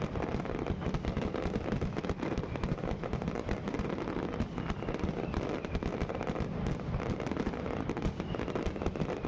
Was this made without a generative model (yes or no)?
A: yes